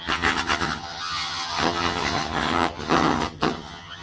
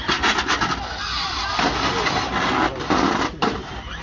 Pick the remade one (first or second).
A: first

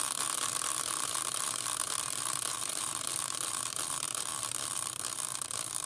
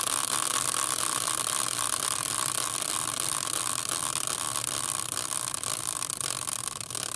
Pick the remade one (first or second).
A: first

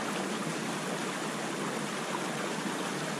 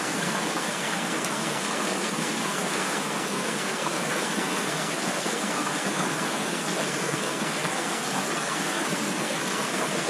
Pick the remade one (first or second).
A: second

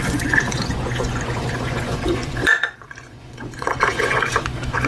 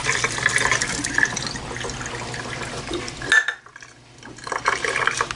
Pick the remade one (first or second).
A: first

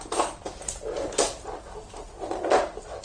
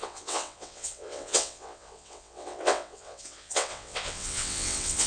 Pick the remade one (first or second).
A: second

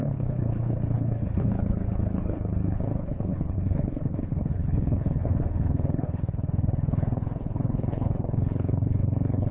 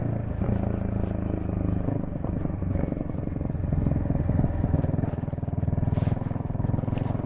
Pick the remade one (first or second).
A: first